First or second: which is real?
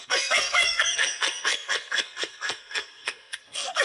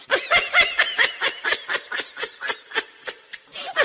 second